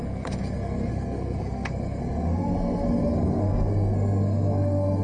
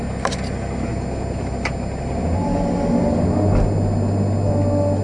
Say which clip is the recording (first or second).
second